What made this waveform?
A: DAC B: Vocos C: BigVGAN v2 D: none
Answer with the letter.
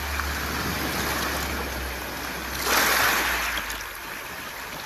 D